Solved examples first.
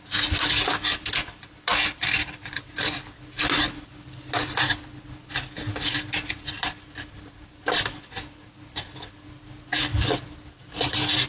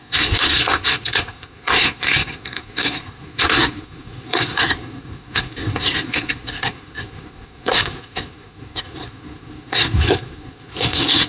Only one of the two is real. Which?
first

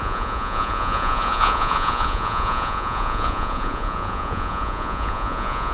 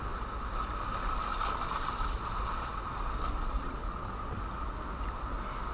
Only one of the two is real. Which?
second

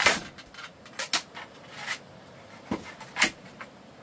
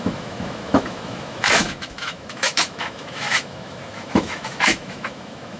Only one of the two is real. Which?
first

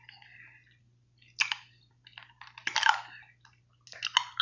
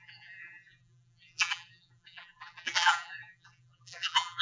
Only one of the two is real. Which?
first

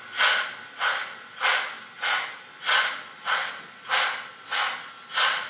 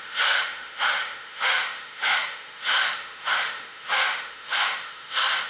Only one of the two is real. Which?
first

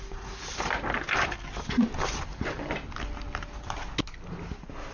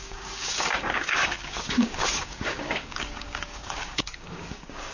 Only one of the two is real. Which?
first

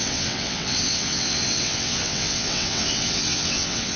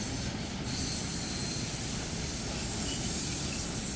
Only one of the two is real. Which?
second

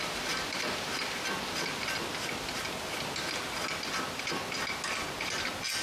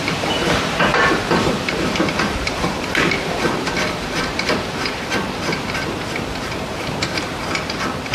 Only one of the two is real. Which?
first